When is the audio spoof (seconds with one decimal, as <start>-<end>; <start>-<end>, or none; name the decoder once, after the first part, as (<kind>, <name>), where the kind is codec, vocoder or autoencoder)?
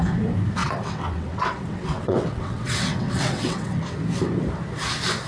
0.6-3.8 (vocoder, WaveNeXt)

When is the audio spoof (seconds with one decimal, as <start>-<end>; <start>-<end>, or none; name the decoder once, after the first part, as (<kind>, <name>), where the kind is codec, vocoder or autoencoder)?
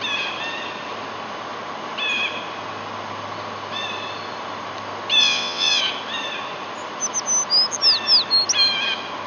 5.2-5.8 (vocoder, WaveNeXt)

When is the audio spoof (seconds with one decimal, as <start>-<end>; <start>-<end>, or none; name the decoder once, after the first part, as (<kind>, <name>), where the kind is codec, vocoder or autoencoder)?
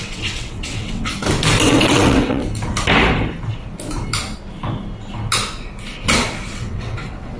0.0-1.1 (vocoder, WaveNeXt); 1.7-2.4; 6.5-7.4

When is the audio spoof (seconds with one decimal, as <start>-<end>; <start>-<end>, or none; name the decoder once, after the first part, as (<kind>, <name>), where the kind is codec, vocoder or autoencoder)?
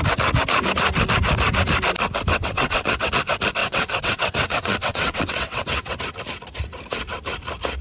2.3-3.1 (vocoder, WaveNeXt); 3.6-6.0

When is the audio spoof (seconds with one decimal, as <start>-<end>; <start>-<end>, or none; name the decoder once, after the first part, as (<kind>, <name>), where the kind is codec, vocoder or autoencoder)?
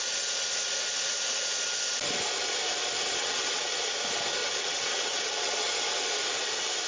3.2-3.8 (vocoder, WaveNeXt); 4.4-5.7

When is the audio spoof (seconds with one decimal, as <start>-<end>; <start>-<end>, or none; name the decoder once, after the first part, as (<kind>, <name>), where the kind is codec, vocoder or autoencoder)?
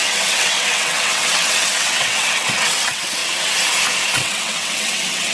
0.0-3.2 (vocoder, WaveNeXt); 4.1-5.3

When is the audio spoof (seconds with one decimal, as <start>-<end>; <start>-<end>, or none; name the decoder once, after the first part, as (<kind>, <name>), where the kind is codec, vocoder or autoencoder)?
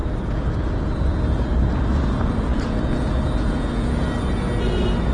none